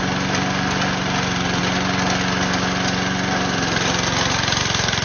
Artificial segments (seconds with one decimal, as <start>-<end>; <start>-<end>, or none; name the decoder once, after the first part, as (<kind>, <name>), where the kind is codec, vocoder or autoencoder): none